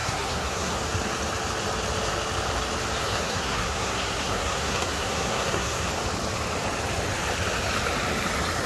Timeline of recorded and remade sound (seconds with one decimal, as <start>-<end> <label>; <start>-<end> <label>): 0.0-0.8 remade; 0.8-3.0 recorded; 3.0-5.9 remade; 5.9-8.7 recorded